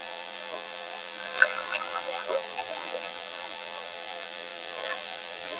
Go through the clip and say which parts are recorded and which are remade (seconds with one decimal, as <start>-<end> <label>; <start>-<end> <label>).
0.0-5.6 remade